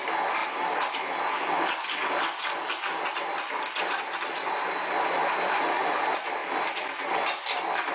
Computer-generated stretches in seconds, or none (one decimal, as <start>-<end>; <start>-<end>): none